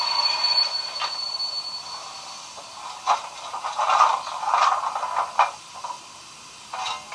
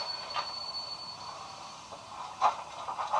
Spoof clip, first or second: second